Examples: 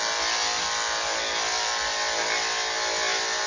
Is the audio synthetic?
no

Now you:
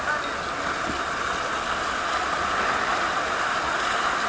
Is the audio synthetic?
no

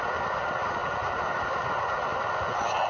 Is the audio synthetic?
no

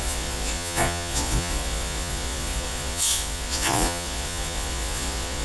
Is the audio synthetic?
yes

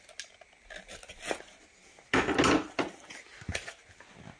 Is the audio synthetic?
no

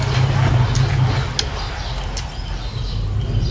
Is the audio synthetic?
no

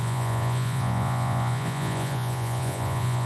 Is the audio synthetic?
yes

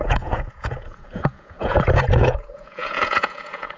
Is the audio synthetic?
yes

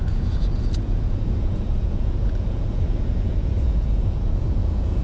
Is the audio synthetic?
yes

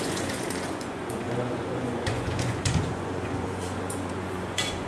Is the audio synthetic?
yes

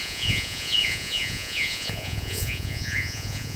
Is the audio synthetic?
yes